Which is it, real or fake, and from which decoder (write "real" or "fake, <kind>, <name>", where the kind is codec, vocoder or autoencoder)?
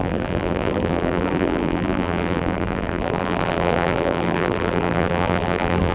fake, vocoder, BigVGAN v2